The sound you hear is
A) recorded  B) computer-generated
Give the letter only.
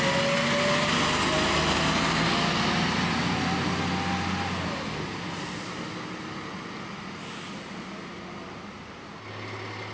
A